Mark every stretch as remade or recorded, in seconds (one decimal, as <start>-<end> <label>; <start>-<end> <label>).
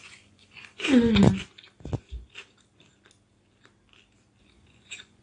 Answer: 0.0-1.3 remade; 1.3-4.4 recorded; 4.4-5.2 remade